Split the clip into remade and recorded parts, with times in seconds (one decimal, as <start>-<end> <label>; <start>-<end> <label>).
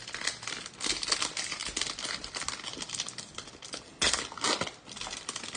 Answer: 0.0-5.6 recorded